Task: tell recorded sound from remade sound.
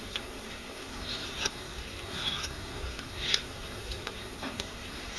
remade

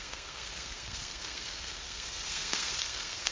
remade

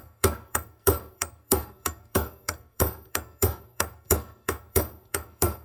remade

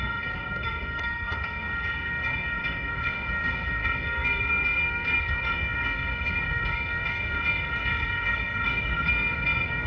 remade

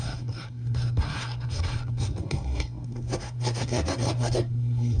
remade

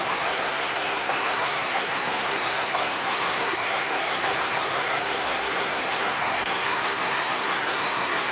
remade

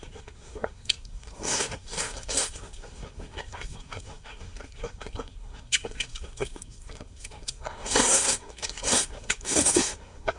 remade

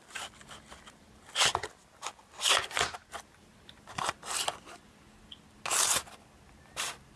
recorded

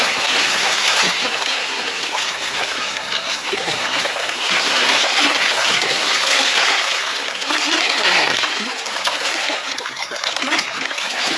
remade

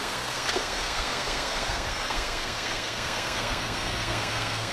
remade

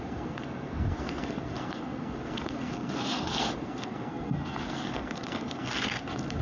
remade